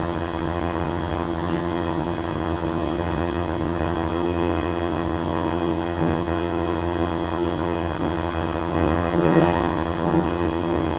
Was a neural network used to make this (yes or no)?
yes